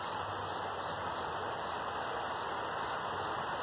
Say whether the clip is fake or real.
real